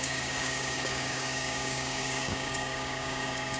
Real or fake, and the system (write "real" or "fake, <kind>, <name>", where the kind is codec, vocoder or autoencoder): fake, codec, DAC